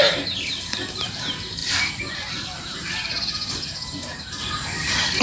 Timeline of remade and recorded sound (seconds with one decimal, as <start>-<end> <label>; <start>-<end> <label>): 0.0-1.6 remade; 1.6-2.3 recorded; 2.3-4.4 remade; 4.4-5.2 recorded

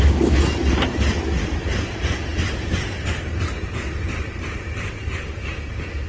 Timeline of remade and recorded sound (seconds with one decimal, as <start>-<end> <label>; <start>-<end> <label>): 0.0-2.3 recorded; 2.3-6.1 remade

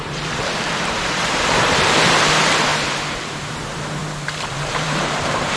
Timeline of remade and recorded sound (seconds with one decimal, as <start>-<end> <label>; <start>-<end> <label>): 0.0-2.7 remade; 2.7-3.2 recorded; 3.2-4.0 remade; 4.0-4.7 recorded; 4.7-5.6 remade

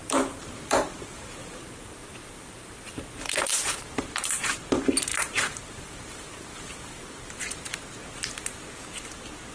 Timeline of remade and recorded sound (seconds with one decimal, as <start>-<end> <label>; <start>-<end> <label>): 0.0-4.5 remade; 4.5-5.1 recorded; 5.1-7.4 remade; 7.4-9.5 recorded